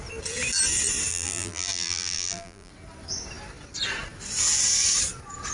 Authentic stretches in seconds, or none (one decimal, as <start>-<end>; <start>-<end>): 0.0-1.1; 2.7-5.5